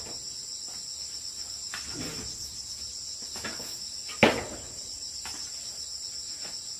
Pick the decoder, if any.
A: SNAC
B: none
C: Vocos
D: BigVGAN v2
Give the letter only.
B